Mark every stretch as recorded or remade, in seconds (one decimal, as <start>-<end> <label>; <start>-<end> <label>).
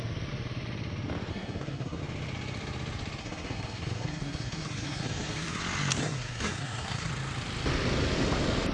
0.0-1.3 recorded; 1.3-2.0 remade; 2.0-3.2 recorded; 3.2-5.6 remade; 5.6-6.0 recorded; 6.0-7.1 remade; 7.1-8.7 recorded